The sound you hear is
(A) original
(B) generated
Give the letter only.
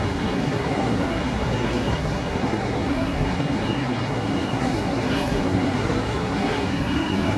B